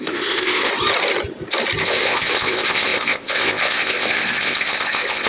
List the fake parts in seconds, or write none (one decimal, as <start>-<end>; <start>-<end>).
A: 0.0-0.7; 1.8-5.3